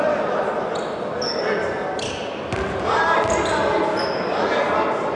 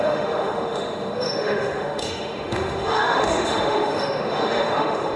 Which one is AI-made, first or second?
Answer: second